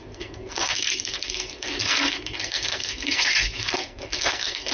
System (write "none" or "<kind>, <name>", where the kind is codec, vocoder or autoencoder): codec, SNAC